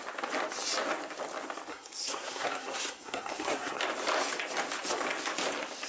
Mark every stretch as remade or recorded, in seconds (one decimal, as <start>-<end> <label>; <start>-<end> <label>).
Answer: 0.0-1.7 recorded; 1.7-3.8 remade; 3.8-5.9 recorded